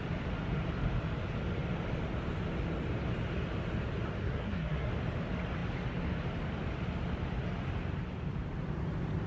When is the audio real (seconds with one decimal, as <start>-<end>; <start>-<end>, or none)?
0.0-4.2; 4.9-9.3